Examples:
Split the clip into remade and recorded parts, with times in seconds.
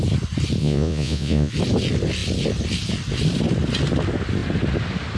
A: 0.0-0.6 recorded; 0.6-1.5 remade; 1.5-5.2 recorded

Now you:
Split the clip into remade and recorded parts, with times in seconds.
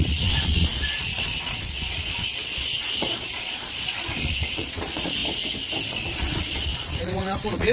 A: 0.0-5.2 remade; 5.2-5.9 recorded; 5.9-7.7 remade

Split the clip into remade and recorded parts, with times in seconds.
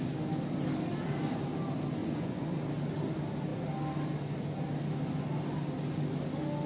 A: 0.0-2.0 recorded; 2.0-2.5 remade; 2.5-6.7 recorded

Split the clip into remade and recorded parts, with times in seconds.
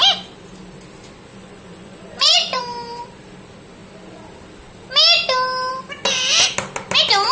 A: 0.0-1.3 recorded; 1.3-2.6 remade; 2.6-7.3 recorded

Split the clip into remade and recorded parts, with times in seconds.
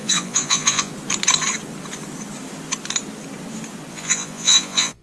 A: 0.0-0.9 remade; 0.9-3.9 recorded; 3.9-5.0 remade